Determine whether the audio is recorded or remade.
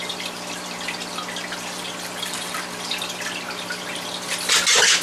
recorded